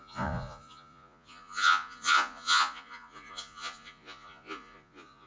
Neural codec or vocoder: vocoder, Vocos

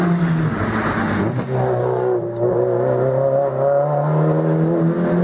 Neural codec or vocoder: none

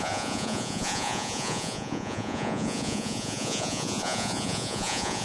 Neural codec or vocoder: vocoder, Vocos